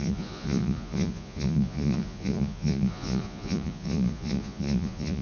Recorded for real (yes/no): no